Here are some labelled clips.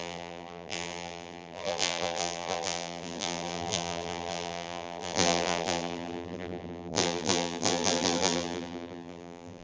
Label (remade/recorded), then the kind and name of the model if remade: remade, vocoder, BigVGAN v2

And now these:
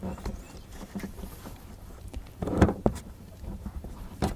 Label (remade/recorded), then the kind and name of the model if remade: remade, vocoder, BigVGAN v2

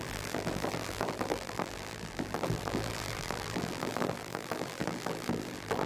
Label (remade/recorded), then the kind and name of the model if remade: remade, vocoder, BigVGAN v2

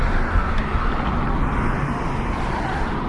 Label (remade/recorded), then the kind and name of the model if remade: recorded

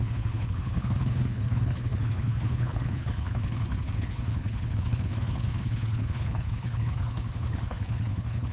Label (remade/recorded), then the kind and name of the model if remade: remade, codec, HILCodec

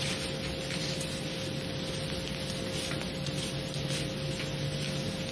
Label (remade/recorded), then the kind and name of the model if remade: recorded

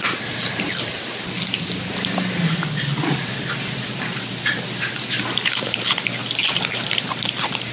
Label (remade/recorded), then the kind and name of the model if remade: recorded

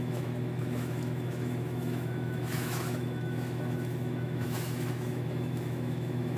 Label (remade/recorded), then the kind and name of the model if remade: remade, autoencoder, DAC-VAE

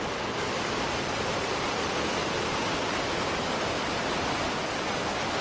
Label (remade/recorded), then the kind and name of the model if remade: recorded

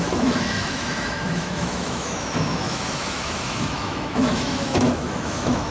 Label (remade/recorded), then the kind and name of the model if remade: remade, autoencoder, DAC-VAE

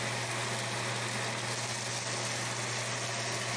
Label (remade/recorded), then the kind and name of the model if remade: recorded